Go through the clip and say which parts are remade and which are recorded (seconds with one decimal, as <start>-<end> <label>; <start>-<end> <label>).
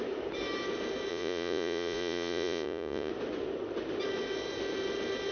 0.0-1.1 recorded; 1.1-3.1 remade; 3.1-5.3 recorded